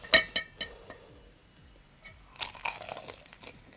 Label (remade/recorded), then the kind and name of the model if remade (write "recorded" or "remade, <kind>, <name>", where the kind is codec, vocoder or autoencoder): recorded